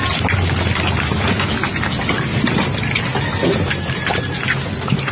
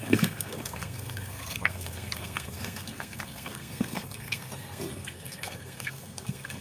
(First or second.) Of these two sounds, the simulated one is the second